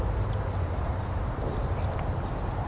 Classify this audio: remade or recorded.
recorded